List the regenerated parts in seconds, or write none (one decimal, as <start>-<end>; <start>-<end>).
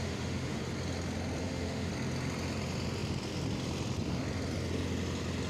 0.0-0.6; 1.4-1.9